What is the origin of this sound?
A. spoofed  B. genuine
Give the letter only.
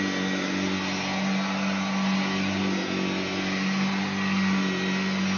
B